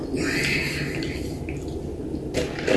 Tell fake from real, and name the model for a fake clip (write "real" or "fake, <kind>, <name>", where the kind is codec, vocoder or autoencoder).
real